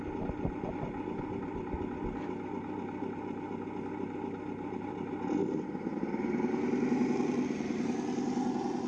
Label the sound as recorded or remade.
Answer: recorded